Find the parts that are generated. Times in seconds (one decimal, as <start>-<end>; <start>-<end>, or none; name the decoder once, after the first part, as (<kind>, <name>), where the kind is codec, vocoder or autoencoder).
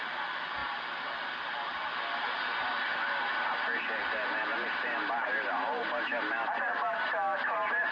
4.5-6.7 (vocoder, BigVGAN v2)